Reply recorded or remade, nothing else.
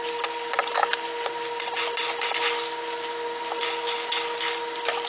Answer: recorded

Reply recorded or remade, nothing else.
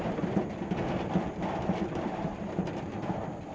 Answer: remade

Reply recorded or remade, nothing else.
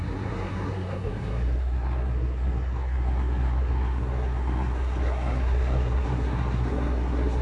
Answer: remade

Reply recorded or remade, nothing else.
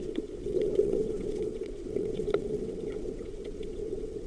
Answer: remade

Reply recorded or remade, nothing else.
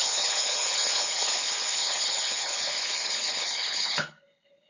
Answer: remade